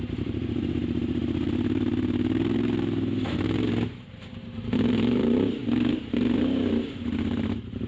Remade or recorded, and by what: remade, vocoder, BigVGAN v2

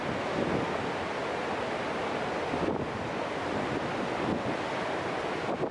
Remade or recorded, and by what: recorded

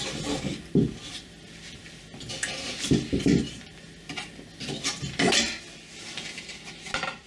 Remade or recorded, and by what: recorded